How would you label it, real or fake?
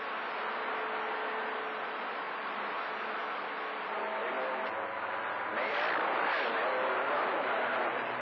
real